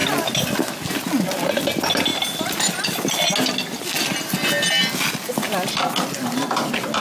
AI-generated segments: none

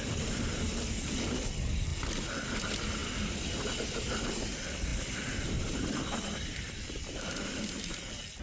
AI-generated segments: 0.0-1.9 (vocoder, BigVGAN v2); 2.5-8.4

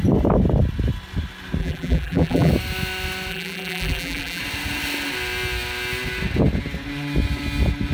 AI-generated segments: 1.6-2.5 (vocoder, BigVGAN v2); 3.3-4.4

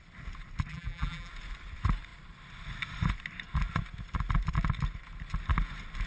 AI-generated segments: 0.7-1.3 (vocoder, BigVGAN v2)

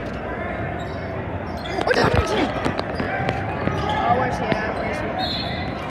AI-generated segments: 4.4-5.5 (vocoder, BigVGAN v2)

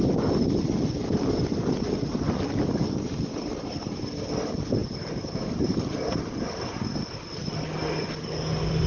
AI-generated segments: 3.5-4.0 (vocoder, BigVGAN v2); 4.8-6.6